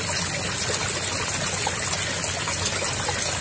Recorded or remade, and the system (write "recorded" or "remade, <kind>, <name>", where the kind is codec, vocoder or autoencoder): recorded